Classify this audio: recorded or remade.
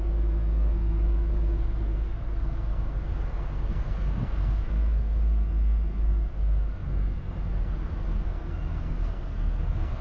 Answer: remade